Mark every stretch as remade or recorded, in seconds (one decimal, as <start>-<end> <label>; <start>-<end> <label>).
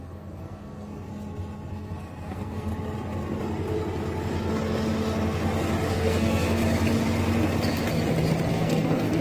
0.0-1.1 remade; 1.1-1.7 recorded; 1.7-2.7 remade; 2.7-5.9 recorded; 5.9-6.6 remade; 6.6-8.5 recorded; 8.5-9.2 remade